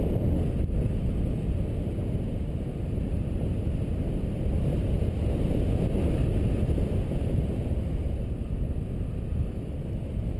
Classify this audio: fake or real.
real